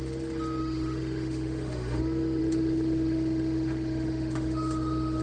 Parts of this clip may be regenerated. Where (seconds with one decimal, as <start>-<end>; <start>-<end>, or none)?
0.6-2.0; 2.4-5.2